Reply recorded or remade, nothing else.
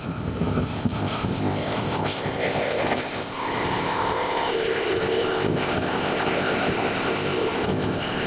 remade